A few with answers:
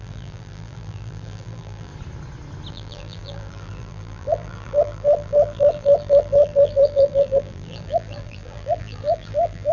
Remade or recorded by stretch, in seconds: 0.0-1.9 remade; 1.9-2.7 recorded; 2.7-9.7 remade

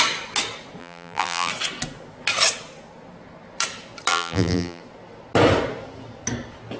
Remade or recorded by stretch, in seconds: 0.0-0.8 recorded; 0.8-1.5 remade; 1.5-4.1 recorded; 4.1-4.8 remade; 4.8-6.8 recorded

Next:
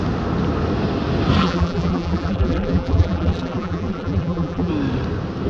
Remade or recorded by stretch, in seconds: 0.0-1.4 recorded; 1.4-4.7 remade; 4.7-5.5 recorded

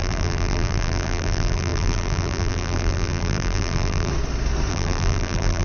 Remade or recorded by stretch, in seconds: 0.0-4.1 remade; 4.1-4.7 recorded; 4.7-5.6 remade

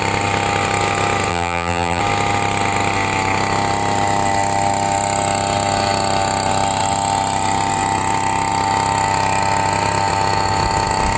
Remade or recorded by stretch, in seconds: 0.0-1.3 recorded; 1.3-2.0 remade; 2.0-11.2 recorded

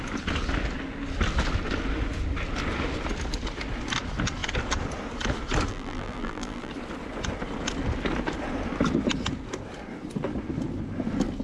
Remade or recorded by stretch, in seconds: 0.0-5.7 recorded; 5.7-6.7 remade; 6.7-11.4 recorded

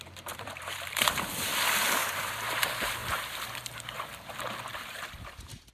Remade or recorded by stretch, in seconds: 0.0-1.5 remade; 1.5-2.0 recorded; 2.0-5.7 remade